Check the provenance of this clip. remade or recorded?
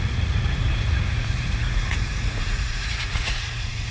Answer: remade